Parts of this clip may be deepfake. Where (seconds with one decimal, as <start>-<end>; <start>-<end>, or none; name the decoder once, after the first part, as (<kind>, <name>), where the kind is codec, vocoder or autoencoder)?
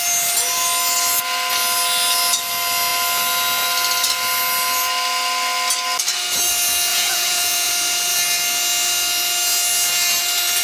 6.9-7.7 (vocoder, Vocos)